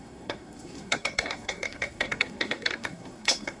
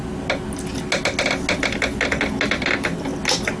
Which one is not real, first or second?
first